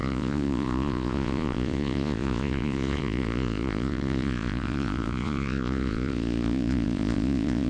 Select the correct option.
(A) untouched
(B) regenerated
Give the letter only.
B